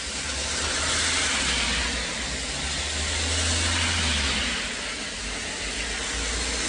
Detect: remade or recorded recorded